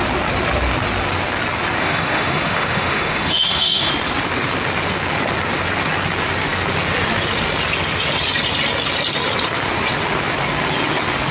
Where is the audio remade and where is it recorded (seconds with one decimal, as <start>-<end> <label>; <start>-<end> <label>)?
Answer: 0.0-1.8 recorded; 1.8-3.9 remade; 3.9-11.3 recorded